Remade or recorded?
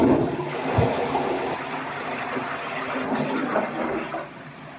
recorded